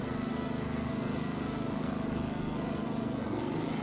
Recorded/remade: remade